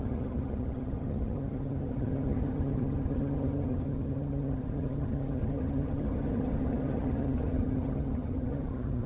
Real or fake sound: fake